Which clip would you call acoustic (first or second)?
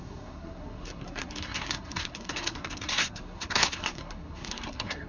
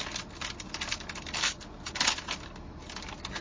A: second